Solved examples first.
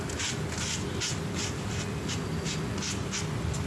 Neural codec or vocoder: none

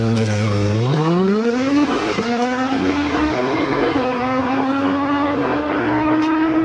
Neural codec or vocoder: codec, SNAC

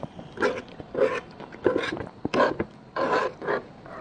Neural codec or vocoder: none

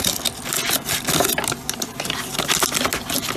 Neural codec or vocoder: none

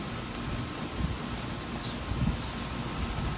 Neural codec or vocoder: none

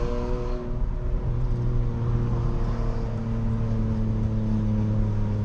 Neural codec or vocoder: none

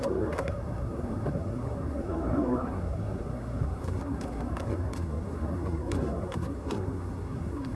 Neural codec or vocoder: codec, SNAC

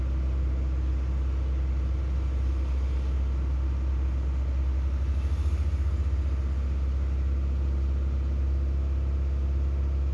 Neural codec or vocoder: none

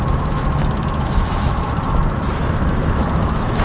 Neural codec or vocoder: autoencoder, DAC-VAE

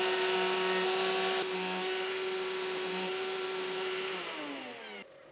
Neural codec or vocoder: none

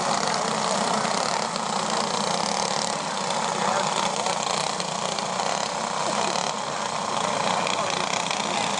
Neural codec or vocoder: none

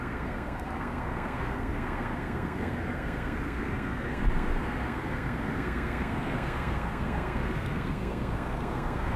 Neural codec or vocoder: codec, SNAC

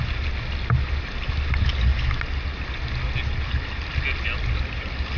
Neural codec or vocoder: none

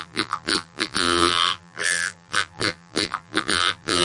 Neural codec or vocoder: vocoder, BigVGAN v2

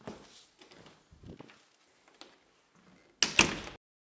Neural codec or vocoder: none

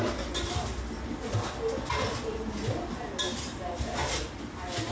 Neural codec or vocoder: none